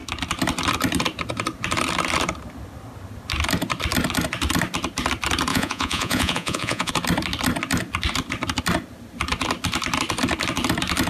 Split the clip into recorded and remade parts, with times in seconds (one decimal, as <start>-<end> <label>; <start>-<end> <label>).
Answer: 0.0-5.5 recorded; 5.5-6.9 remade; 6.9-11.1 recorded